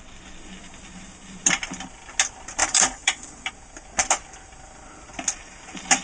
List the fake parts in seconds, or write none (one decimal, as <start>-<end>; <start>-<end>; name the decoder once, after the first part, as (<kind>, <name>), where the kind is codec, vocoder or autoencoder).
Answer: 2.6-3.5 (vocoder, BigVGAN v2)